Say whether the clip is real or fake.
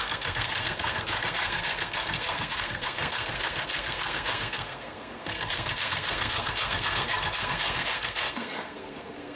fake